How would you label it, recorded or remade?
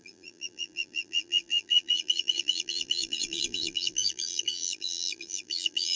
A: remade